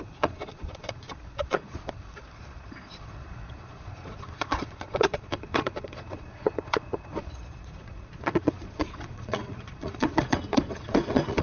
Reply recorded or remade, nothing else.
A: remade